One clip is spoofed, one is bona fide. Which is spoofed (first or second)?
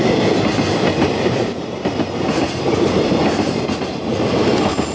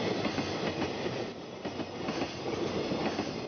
first